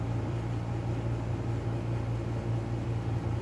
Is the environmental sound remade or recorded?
remade